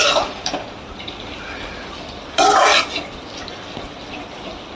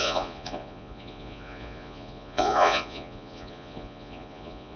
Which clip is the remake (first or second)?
second